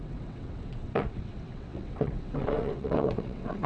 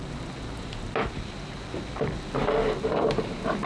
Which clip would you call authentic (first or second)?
second